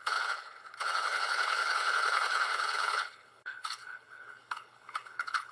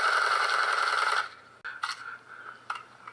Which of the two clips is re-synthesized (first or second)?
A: first